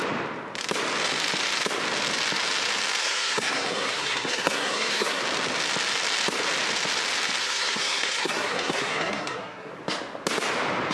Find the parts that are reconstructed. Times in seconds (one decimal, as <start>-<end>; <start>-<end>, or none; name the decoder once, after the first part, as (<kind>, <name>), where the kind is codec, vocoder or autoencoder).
3.0-5.2 (codec, SNAC); 7.4-9.7